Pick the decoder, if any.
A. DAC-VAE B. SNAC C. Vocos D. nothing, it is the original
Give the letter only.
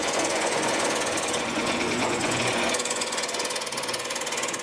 C